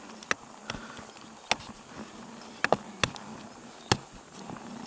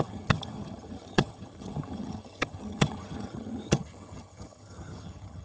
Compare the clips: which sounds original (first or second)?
first